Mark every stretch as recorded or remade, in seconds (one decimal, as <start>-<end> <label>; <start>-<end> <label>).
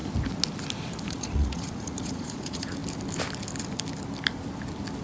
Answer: 0.0-1.1 recorded; 1.1-2.8 remade; 2.8-5.0 recorded